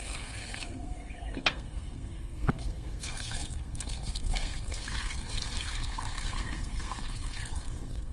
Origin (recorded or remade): remade